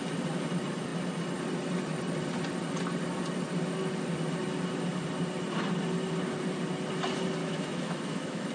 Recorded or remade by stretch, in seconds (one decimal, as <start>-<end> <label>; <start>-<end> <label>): 0.0-7.4 recorded; 7.4-8.5 remade